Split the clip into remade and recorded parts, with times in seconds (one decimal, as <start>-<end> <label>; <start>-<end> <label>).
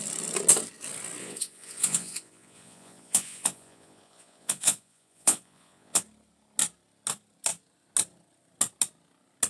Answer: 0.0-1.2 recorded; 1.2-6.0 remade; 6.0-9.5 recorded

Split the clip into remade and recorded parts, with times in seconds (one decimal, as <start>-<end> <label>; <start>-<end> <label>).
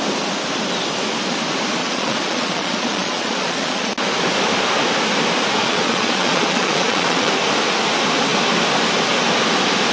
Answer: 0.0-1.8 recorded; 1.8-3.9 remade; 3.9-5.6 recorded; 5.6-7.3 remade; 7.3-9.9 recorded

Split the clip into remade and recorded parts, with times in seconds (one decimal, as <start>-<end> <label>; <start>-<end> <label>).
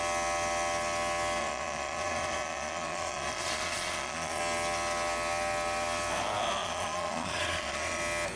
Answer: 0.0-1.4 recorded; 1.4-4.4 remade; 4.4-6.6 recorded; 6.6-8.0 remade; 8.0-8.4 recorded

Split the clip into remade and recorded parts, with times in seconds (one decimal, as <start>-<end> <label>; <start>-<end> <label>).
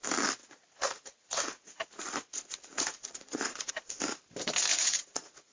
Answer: 0.0-0.4 recorded; 0.4-3.7 remade; 3.7-4.7 recorded; 4.7-5.5 remade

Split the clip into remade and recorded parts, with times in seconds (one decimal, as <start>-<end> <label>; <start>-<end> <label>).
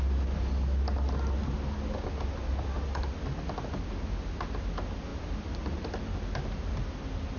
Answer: 0.0-7.4 recorded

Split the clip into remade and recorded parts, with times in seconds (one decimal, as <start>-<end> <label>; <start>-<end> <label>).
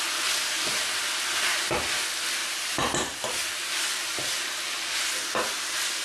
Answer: 0.0-6.0 recorded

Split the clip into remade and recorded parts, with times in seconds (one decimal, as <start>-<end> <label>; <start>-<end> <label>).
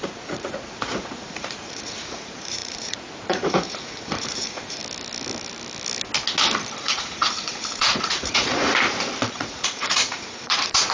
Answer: 0.0-4.8 remade; 4.8-6.8 recorded; 6.8-8.7 remade; 8.7-9.3 recorded; 9.3-10.9 remade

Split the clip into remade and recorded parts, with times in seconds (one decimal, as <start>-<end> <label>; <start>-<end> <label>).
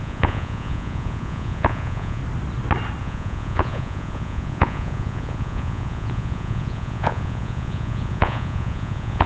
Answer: 0.0-2.2 remade; 2.2-3.0 recorded; 3.0-9.3 remade